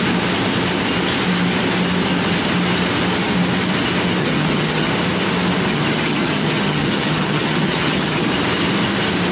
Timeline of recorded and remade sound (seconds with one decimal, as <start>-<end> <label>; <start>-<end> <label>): 0.0-4.2 recorded; 4.2-4.9 remade; 4.9-5.7 recorded; 5.7-8.3 remade; 8.3-9.3 recorded